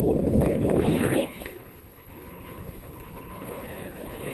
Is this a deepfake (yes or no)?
yes